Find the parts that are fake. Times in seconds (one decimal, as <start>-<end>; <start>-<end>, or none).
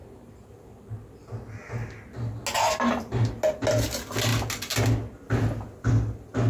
none